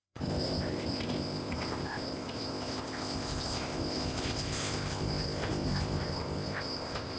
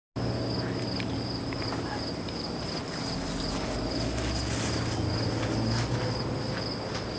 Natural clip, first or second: second